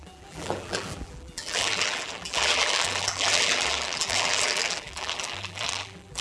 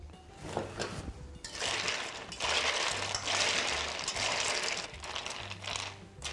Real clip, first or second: second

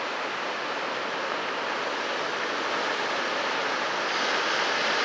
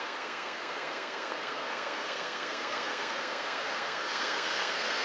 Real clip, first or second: first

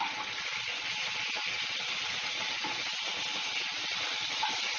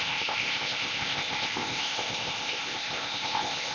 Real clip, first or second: first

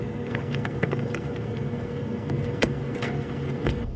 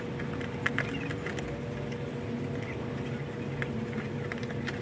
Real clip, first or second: second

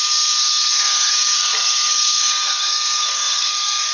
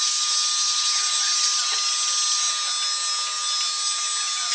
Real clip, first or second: second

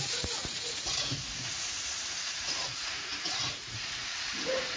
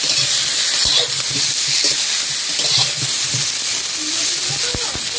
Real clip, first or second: second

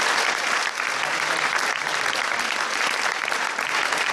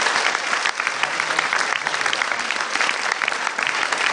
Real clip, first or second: first